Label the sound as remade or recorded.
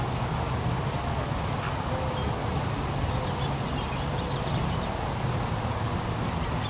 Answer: recorded